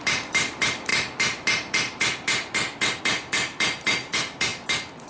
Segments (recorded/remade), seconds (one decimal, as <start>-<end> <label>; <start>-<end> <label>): 0.0-0.9 remade; 0.9-3.0 recorded; 3.0-4.5 remade; 4.5-5.1 recorded